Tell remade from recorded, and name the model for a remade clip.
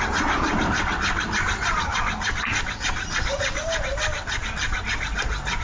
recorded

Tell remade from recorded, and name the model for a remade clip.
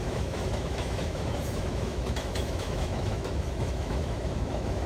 remade, autoencoder, DAC-VAE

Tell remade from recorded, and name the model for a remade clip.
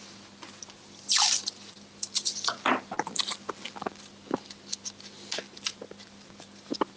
recorded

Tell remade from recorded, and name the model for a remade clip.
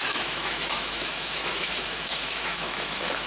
remade, autoencoder, DAC-VAE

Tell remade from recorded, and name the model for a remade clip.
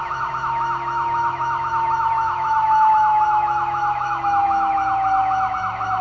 remade, autoencoder, DAC-VAE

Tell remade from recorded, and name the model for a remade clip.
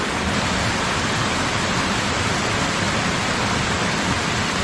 recorded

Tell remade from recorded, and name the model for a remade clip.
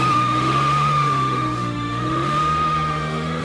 remade, autoencoder, DAC-VAE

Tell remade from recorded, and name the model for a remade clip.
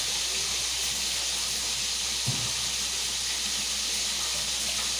recorded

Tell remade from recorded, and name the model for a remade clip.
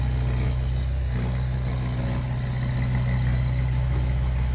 recorded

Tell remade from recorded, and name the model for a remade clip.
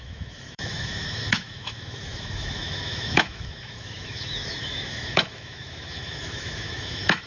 remade, autoencoder, DAC-VAE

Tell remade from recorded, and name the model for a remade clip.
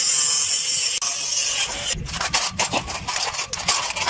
recorded